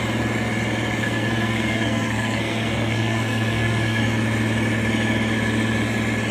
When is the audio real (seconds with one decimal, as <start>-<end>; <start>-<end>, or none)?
0.0-1.0; 4.0-6.3